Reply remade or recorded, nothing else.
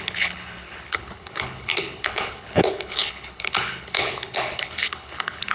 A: remade